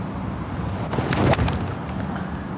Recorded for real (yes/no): yes